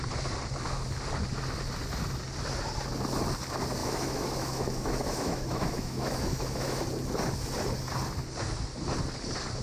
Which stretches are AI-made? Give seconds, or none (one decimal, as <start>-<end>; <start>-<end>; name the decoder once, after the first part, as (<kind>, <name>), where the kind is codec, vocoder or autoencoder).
3.8-6.8 (autoencoder, DAC-VAE)